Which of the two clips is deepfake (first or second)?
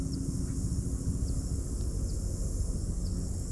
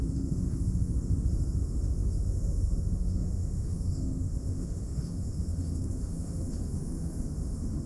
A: second